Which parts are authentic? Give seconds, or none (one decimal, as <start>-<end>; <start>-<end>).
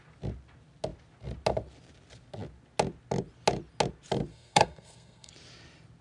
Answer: 0.0-4.3; 5.3-6.0